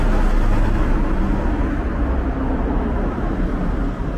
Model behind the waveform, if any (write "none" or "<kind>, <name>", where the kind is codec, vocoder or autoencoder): none